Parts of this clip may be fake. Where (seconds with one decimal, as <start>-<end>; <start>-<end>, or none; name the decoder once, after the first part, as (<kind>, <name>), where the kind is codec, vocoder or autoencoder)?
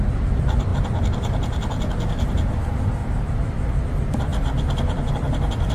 0.0-0.7 (vocoder, BigVGAN v2); 2.5-3.0; 3.9-5.7